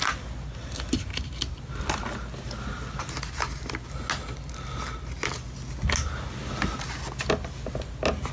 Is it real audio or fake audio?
real